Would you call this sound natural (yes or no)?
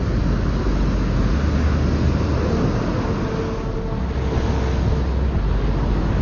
yes